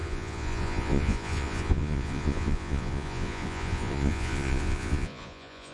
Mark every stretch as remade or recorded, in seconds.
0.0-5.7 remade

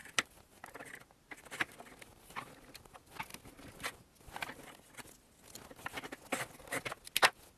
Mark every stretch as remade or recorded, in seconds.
0.0-7.6 recorded

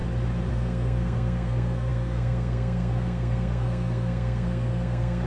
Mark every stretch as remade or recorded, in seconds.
0.0-0.5 recorded; 0.5-5.3 remade

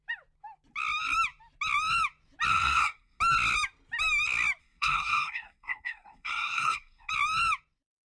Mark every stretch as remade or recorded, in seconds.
0.0-2.5 recorded; 2.5-3.2 remade; 3.2-4.6 recorded; 4.6-7.1 remade; 7.1-8.1 recorded

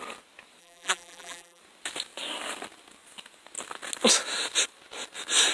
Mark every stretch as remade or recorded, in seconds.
0.0-0.6 recorded; 0.6-1.6 remade; 1.6-5.5 recorded

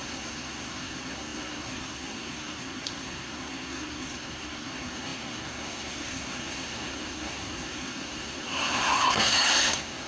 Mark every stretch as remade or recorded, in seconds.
0.0-10.1 remade